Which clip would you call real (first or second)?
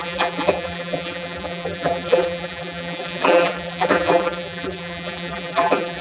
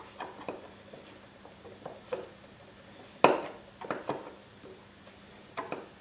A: second